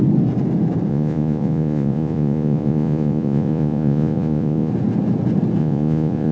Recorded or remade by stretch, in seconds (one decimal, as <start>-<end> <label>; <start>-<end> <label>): 0.0-0.9 recorded; 0.9-4.7 remade; 4.7-5.6 recorded; 5.6-6.3 remade